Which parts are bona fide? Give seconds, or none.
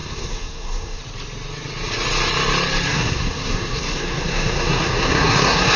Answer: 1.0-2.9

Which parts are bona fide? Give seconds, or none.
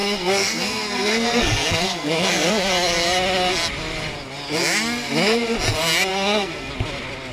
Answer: 2.5-6.1; 6.7-7.3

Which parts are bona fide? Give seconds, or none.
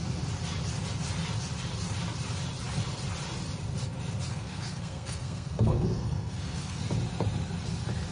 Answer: 0.0-4.3; 6.8-8.1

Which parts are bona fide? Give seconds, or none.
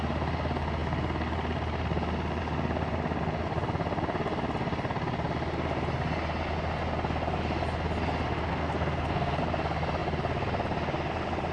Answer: 0.0-8.5; 9.4-11.5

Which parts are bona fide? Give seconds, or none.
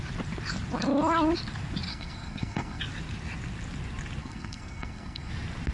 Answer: 0.0-1.9; 2.8-4.2; 5.3-5.7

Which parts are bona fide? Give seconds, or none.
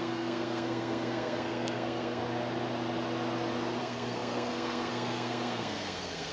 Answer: 2.2-3.8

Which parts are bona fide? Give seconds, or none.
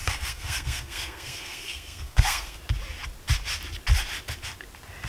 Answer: 2.6-5.1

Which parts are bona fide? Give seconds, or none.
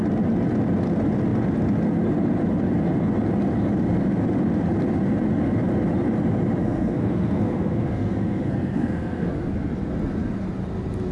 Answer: 0.0-6.6; 9.3-11.1